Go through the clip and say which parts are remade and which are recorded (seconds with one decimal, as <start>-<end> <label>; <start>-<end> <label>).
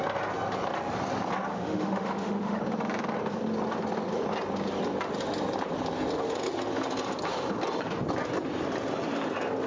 0.0-1.5 recorded; 1.5-2.6 remade; 2.6-9.7 recorded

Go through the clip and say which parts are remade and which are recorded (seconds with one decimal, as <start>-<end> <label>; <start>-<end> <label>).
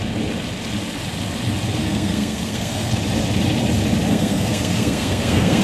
0.0-1.8 recorded; 1.8-2.9 remade; 2.9-4.1 recorded; 4.1-5.6 remade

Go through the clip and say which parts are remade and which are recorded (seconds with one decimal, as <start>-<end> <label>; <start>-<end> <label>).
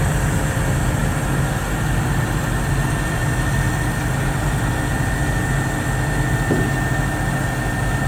0.0-8.1 recorded